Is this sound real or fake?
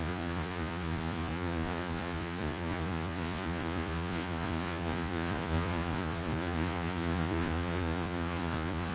fake